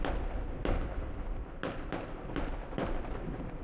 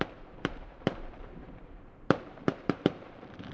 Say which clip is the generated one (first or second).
second